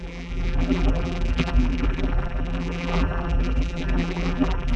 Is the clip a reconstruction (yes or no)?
yes